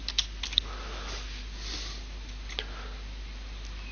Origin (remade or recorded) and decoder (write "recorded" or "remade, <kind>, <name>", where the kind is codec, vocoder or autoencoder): recorded